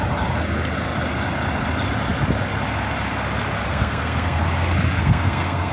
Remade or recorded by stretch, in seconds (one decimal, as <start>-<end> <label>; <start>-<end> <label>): 0.0-3.7 recorded; 3.7-4.4 remade; 4.4-5.0 recorded; 5.0-5.7 remade

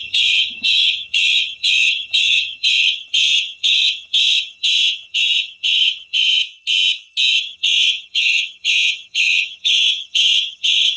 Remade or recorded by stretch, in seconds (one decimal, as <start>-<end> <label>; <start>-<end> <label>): 0.0-6.4 remade; 6.4-7.3 recorded; 7.3-11.0 remade

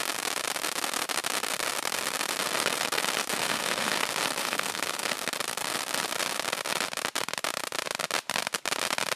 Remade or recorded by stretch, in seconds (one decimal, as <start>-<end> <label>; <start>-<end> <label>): 0.0-3.4 recorded; 3.4-3.9 remade; 3.9-4.4 recorded; 4.4-5.1 remade; 5.1-9.2 recorded

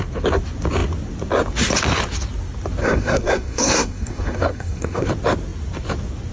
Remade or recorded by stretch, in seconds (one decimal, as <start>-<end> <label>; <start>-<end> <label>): 0.0-2.8 recorded; 2.8-5.1 remade; 5.1-6.3 recorded

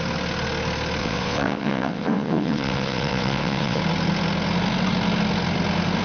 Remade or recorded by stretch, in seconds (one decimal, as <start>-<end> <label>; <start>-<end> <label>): 0.0-1.0 recorded; 1.0-3.8 remade; 3.8-6.0 recorded